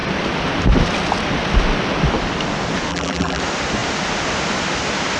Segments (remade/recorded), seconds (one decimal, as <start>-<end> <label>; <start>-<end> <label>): 0.0-2.9 recorded; 2.9-3.4 remade; 3.4-5.2 recorded